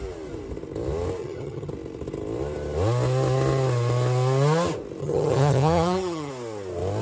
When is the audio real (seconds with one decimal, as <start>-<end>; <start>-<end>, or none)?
0.0-1.2; 1.7-5.0; 6.3-7.0